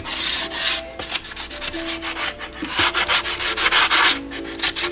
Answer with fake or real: real